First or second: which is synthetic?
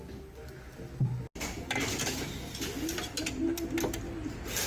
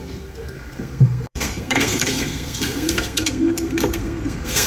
second